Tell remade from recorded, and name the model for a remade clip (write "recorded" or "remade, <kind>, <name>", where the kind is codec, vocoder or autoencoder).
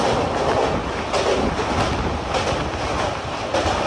recorded